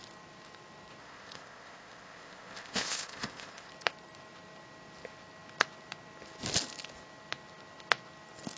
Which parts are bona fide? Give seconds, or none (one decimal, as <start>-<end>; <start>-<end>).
0.0-1.0; 3.7-8.6